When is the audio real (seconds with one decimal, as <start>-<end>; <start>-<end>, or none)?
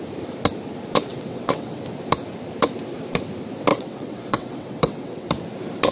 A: 0.0-1.1; 1.8-3.7; 5.3-5.9